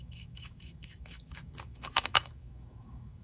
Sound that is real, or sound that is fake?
fake